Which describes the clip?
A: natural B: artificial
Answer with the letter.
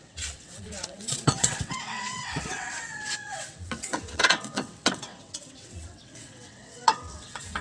B